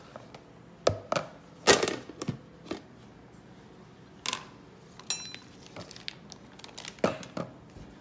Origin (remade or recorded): recorded